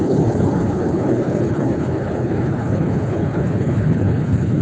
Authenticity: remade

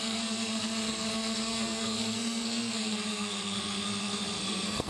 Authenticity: remade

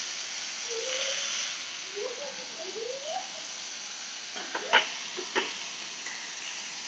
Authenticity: recorded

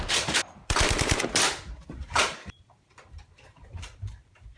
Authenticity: remade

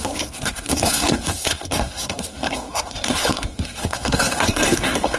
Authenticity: remade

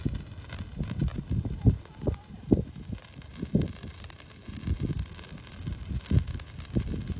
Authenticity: recorded